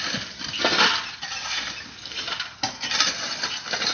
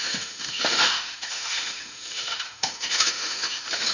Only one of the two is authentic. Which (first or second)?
first